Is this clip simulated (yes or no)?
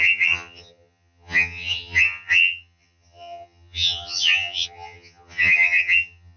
yes